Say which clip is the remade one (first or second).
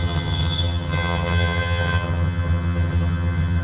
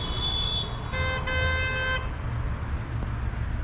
first